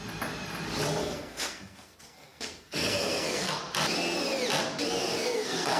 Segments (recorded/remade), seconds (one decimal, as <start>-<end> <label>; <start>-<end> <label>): 0.0-1.0 recorded; 1.0-3.6 remade; 3.6-5.0 recorded; 5.0-5.8 remade